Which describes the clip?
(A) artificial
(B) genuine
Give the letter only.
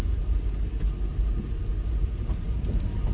B